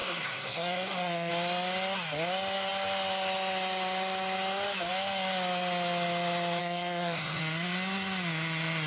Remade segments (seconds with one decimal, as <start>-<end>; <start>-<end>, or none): 0.0-1.3; 6.6-7.4